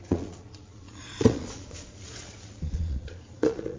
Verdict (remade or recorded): remade